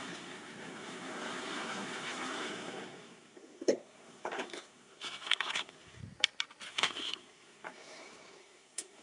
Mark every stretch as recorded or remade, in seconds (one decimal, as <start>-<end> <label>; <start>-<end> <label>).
0.0-6.0 remade; 6.0-6.7 recorded; 6.7-9.0 remade